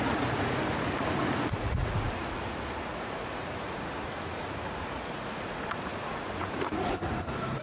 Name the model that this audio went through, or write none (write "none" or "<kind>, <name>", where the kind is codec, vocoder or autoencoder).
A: vocoder, Vocos